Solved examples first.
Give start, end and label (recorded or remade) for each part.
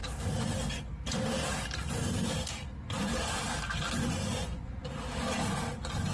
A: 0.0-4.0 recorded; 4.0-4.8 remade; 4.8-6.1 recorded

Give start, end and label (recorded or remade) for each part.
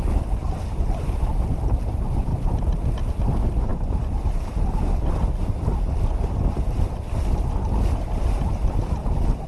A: 0.0-2.3 recorded; 2.3-3.1 remade; 3.1-3.7 recorded; 3.7-4.2 remade; 4.2-9.0 recorded; 9.0-9.5 remade